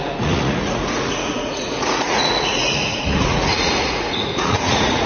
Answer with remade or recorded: remade